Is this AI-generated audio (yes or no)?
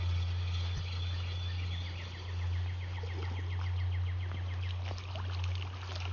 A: no